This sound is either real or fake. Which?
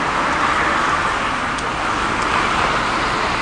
real